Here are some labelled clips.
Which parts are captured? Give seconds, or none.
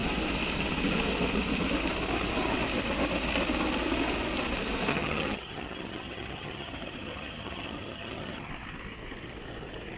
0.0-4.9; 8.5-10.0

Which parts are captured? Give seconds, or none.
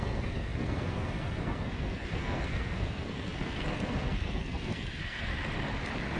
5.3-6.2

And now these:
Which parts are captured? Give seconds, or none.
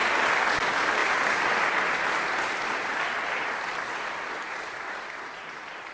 0.0-5.9